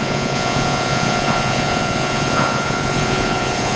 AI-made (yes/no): yes